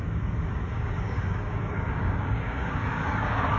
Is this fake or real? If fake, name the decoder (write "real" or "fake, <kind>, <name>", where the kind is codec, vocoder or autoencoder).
fake, codec, DAC